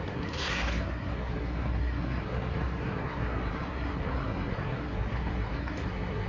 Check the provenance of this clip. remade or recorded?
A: remade